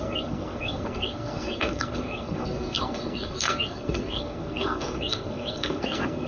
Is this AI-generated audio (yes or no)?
yes